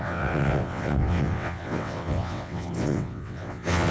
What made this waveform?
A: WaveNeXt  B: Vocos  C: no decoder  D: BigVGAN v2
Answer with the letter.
A